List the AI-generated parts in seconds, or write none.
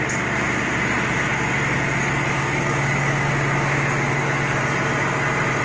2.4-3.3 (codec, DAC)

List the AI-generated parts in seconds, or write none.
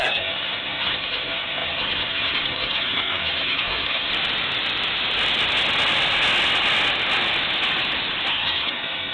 0.0-4.1 (codec, SNAC); 8.3-9.1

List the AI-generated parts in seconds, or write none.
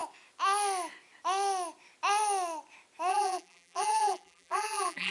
3.1-5.1 (vocoder, BigVGAN v2)